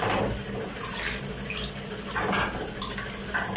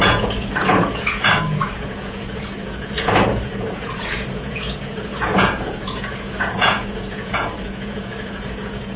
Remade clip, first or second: second